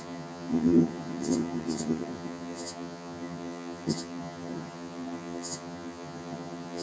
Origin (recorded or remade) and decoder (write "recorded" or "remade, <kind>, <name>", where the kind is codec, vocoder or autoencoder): remade, vocoder, HiFi-GAN